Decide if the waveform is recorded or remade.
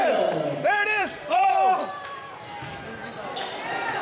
remade